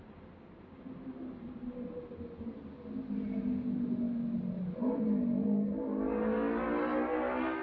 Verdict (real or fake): real